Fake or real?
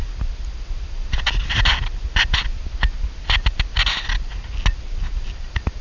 real